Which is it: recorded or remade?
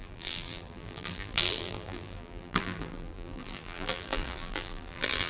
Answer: remade